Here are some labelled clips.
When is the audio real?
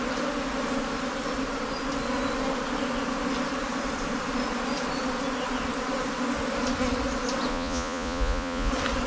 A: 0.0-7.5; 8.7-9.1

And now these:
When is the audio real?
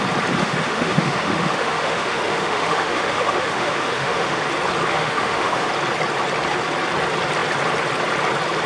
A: 0.0-0.4; 4.4-4.9; 5.7-8.7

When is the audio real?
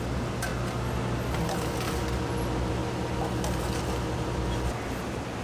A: 0.0-5.4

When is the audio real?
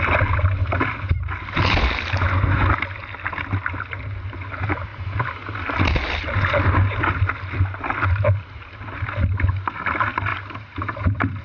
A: 0.0-11.4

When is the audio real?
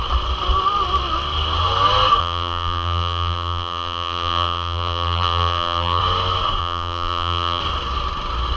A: 0.0-2.2; 6.0-6.6; 7.6-8.6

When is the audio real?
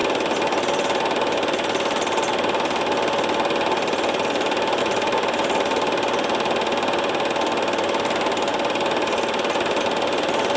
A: 0.0-10.6